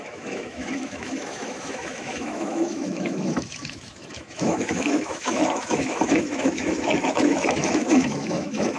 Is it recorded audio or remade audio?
remade